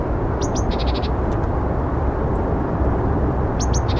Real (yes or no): yes